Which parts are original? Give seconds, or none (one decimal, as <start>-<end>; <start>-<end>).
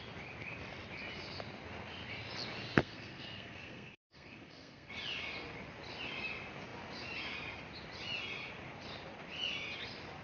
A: 0.0-2.8; 4.9-10.2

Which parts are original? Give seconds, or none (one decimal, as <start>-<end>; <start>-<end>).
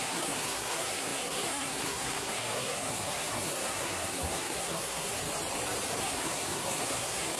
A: 5.1-6.0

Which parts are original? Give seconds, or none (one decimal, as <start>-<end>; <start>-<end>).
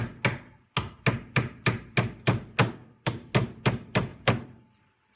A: 0.0-5.2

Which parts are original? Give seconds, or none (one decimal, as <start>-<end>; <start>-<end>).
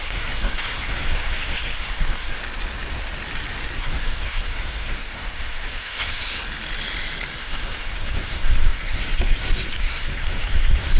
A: 2.4-3.8; 6.4-7.4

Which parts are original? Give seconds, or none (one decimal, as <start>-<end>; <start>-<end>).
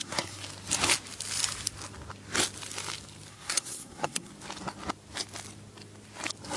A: 0.4-3.3; 4.3-6.6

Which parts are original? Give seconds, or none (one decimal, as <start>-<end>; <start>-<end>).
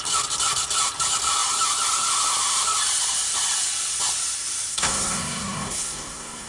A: 0.0-4.7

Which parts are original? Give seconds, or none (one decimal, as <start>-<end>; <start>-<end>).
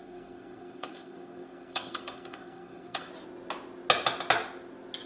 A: 3.1-5.1